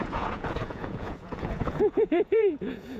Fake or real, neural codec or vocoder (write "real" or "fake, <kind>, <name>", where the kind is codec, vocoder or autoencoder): fake, vocoder, Vocos